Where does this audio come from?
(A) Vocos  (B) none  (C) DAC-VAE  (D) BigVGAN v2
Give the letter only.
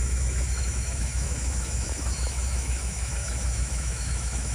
C